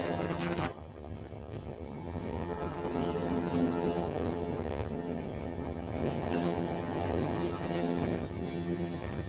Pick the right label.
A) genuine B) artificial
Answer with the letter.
B